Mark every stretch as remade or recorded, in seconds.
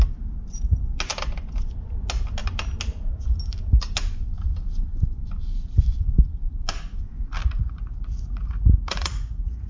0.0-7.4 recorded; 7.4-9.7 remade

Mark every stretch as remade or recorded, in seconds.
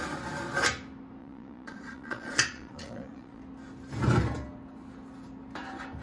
0.0-1.2 recorded; 1.2-3.4 remade; 3.4-6.0 recorded